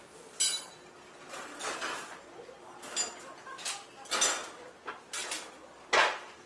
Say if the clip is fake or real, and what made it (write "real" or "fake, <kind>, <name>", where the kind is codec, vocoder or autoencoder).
real